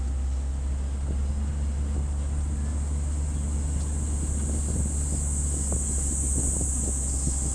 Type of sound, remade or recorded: recorded